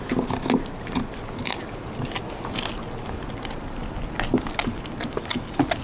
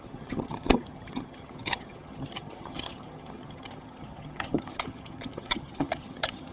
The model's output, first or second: second